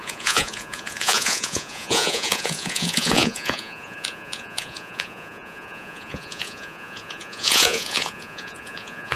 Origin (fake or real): fake